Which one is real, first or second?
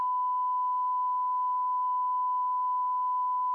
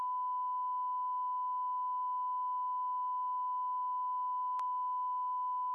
second